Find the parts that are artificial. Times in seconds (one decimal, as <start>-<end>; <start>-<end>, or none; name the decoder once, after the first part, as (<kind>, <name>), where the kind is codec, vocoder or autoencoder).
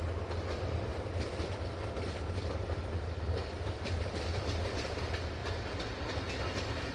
0.9-5.0 (vocoder, BigVGAN v2); 5.4-6.3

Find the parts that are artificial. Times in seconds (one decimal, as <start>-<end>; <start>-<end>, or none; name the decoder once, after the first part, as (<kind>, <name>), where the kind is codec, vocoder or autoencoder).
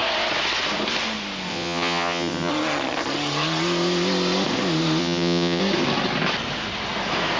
1.5-2.5 (vocoder, WaveNeXt); 5.0-5.6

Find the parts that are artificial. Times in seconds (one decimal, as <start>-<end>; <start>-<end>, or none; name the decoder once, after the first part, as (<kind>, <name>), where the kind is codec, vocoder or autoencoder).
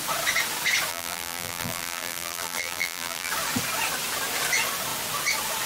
0.9-3.3 (vocoder, BigVGAN v2)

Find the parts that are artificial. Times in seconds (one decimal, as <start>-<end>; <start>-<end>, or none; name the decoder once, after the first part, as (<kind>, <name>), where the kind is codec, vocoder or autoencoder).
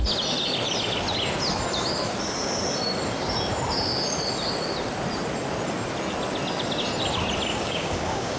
7.5-8.4 (codec, DAC)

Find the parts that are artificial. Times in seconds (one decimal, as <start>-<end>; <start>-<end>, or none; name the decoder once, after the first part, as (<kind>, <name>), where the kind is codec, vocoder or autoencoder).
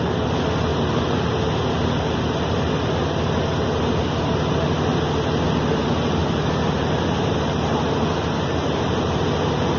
0.7-1.3 (vocoder, BigVGAN v2); 5.8-9.2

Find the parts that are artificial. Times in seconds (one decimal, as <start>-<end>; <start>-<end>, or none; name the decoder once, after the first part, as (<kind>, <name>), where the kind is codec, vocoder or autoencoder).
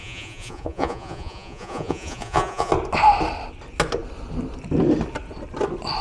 0.0-2.7 (vocoder, Vocos)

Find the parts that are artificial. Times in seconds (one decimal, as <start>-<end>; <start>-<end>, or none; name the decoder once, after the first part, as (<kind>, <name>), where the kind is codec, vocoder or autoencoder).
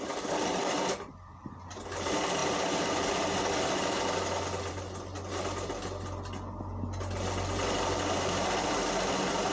none